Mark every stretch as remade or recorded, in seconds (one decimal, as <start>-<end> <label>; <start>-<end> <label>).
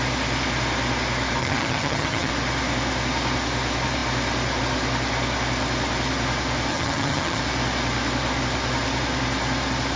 0.0-1.4 recorded; 1.4-2.3 remade; 2.3-6.7 recorded; 6.7-7.4 remade; 7.4-10.0 recorded